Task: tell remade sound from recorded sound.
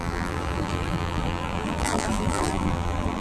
remade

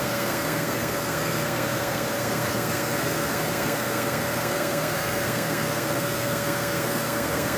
remade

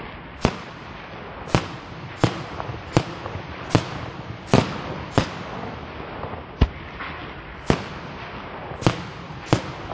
recorded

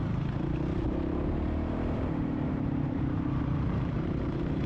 remade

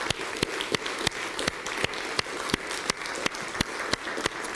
recorded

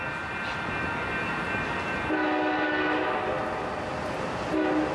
recorded